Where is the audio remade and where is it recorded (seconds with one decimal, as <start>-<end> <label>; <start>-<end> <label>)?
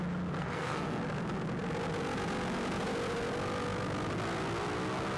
0.0-0.4 recorded; 0.4-1.0 remade; 1.0-5.2 recorded